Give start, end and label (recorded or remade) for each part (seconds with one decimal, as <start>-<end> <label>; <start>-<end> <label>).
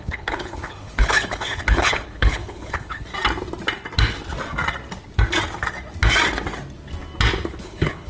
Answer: 0.0-3.1 remade; 3.1-7.6 recorded; 7.6-8.1 remade